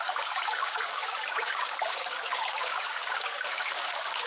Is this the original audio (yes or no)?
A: no